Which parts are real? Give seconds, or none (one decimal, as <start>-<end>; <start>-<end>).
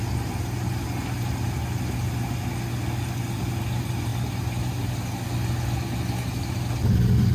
0.0-7.3